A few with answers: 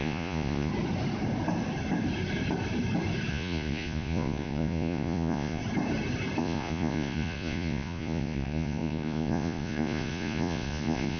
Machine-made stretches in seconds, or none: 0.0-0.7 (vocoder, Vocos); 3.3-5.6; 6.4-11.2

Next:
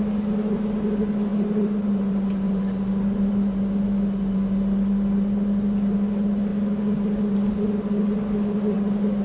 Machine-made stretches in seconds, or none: none